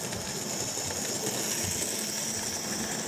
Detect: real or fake real